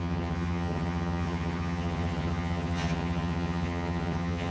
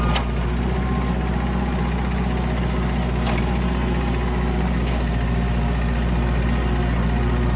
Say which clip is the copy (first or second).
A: first